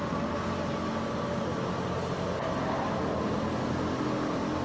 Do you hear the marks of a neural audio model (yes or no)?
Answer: no